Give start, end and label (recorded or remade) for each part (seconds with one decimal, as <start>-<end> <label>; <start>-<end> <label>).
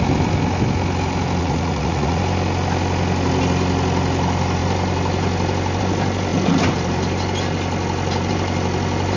0.0-1.4 recorded; 1.4-2.2 remade; 2.2-9.2 recorded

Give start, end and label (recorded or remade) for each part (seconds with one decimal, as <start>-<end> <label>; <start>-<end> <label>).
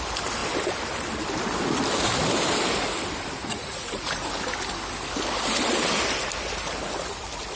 0.0-3.4 recorded; 3.4-4.3 remade; 4.3-7.6 recorded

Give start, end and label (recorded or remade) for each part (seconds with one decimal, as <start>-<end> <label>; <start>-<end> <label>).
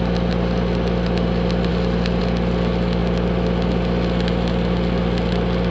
0.0-5.7 recorded